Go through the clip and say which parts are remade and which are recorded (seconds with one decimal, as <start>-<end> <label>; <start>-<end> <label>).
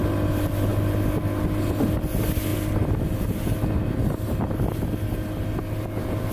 0.0-6.3 recorded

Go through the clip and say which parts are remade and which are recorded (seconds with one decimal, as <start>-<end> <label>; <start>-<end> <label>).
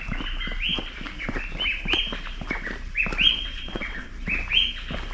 0.0-3.3 recorded; 3.3-4.1 remade; 4.1-5.1 recorded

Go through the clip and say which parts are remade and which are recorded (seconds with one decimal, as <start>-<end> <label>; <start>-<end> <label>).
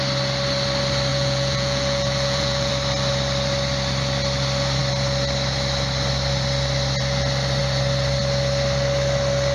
0.0-1.1 recorded; 1.1-2.7 remade; 2.7-9.5 recorded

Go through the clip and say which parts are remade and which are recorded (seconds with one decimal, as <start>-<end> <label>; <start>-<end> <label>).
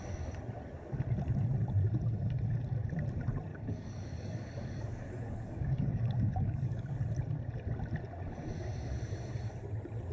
0.0-3.5 recorded; 3.5-6.9 remade; 6.9-10.1 recorded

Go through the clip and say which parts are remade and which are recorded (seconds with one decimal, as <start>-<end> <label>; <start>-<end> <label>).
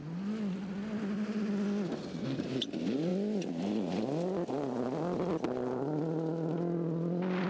0.0-7.5 recorded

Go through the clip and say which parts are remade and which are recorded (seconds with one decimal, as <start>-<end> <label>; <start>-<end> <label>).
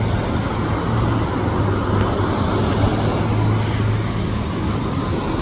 0.0-5.4 recorded